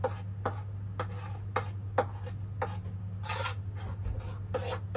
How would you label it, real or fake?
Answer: real